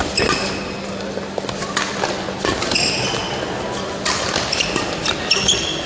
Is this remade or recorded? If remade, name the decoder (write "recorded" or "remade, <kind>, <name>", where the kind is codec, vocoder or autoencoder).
recorded